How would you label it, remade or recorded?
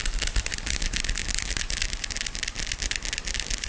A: recorded